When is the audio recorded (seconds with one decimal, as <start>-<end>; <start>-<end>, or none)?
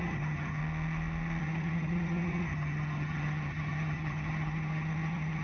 0.6-1.4